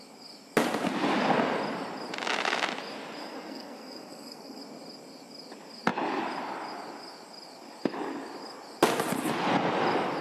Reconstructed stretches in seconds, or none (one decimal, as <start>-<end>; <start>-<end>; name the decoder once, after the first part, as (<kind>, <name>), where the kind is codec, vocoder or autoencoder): 3.2-4.6 (codec, SNAC)